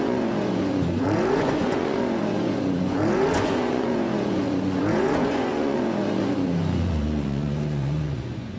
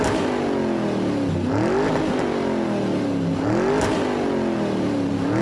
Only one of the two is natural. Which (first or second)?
second